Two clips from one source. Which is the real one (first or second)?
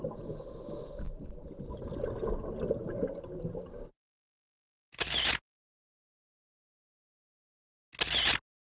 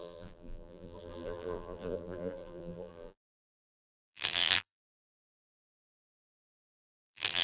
first